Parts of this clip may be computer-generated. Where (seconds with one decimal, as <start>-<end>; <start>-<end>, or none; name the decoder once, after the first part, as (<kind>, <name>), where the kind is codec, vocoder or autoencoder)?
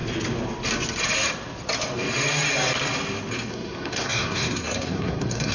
3.3-5.5 (codec, SNAC)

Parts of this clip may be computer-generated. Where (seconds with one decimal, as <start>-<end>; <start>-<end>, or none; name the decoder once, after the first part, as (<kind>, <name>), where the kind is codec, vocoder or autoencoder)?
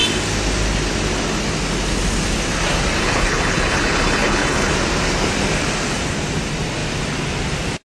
3.0-4.7 (codec, HILCodec)